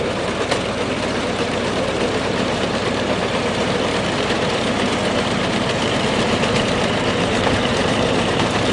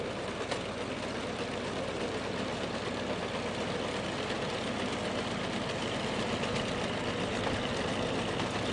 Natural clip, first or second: second